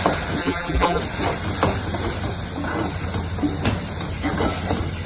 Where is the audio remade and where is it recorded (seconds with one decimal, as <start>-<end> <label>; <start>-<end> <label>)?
0.0-0.4 recorded; 0.4-1.0 remade; 1.0-5.1 recorded